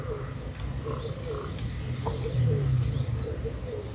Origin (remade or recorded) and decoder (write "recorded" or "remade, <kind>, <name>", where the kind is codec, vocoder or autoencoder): recorded